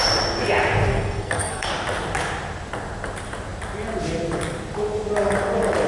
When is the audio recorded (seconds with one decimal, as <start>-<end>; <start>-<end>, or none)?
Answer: 0.0-0.9; 1.7-5.9